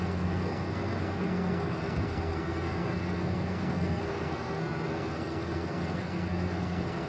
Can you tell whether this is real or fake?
fake